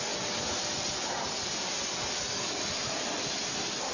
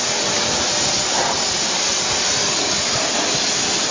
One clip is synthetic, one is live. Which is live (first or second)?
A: first